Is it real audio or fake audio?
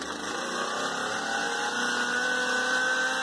real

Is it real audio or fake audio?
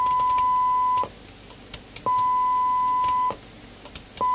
real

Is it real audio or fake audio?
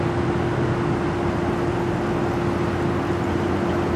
real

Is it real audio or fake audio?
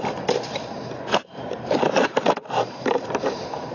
fake